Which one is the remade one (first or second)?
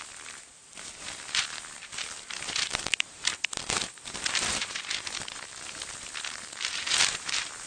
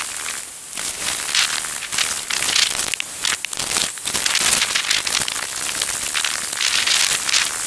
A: first